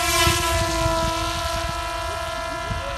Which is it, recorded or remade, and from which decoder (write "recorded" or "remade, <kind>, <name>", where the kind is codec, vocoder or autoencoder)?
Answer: recorded